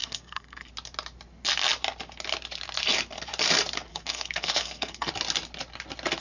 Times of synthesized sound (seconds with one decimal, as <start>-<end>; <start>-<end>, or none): 0.0-0.7; 3.9-5.1